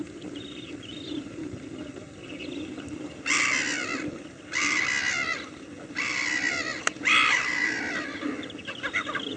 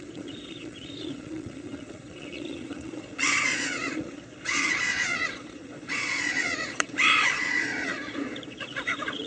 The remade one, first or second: second